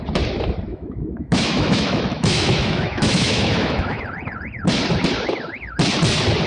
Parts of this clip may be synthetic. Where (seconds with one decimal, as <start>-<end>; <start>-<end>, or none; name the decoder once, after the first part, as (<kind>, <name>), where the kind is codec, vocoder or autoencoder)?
0.7-4.0 (autoencoder, DAC-VAE)